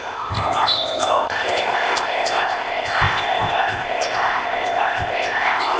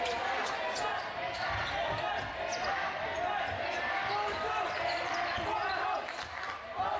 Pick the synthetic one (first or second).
first